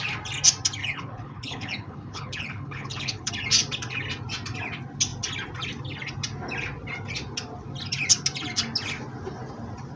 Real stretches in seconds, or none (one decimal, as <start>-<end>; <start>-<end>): 0.0-0.8; 3.3-10.0